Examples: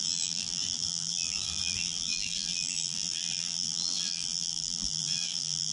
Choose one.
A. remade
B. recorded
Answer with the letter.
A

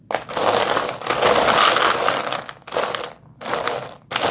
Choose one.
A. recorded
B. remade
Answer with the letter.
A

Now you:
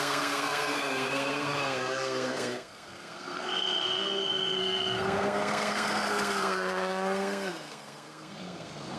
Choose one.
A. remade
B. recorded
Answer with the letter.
A